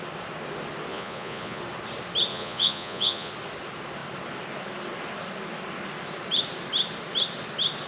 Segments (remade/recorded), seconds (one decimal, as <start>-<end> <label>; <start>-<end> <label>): 0.0-0.9 recorded; 0.9-1.6 remade; 1.6-2.3 recorded; 2.3-3.3 remade; 3.3-7.9 recorded